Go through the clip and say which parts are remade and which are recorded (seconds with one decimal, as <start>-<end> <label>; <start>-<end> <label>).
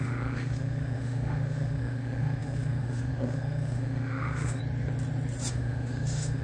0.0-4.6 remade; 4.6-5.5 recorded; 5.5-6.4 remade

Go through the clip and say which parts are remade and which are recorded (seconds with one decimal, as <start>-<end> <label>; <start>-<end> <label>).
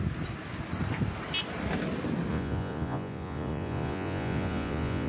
0.0-2.3 recorded; 2.3-5.1 remade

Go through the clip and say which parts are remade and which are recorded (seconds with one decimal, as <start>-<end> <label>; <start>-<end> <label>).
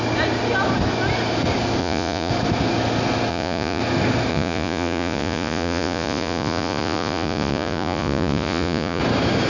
0.0-1.8 recorded; 1.8-2.3 remade; 2.3-3.3 recorded; 3.3-3.8 remade; 3.8-4.3 recorded; 4.3-9.0 remade; 9.0-9.5 recorded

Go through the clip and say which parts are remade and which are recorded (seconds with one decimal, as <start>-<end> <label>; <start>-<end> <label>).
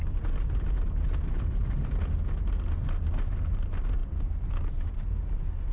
0.0-5.7 recorded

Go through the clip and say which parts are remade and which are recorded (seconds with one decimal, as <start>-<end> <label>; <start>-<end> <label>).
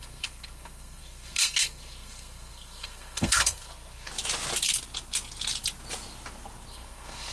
0.0-4.1 remade; 4.1-6.7 recorded; 6.7-7.3 remade